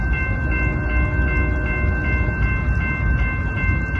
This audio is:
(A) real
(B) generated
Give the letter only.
A